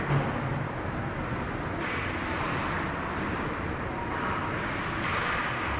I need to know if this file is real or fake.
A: real